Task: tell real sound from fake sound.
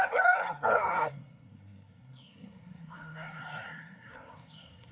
fake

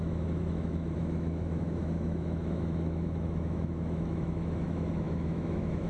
fake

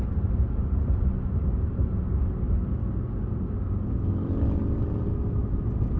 real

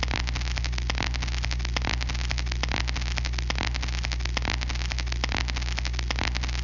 real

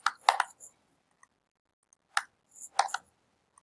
real